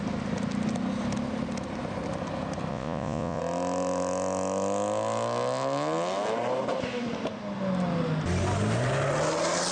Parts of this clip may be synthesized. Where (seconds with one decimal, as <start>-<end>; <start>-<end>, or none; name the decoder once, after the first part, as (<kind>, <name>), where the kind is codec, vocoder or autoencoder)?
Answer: 2.7-3.4 (vocoder, Vocos)